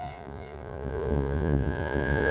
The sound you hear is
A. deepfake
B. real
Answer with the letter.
A